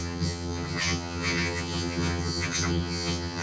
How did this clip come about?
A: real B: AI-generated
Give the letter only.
B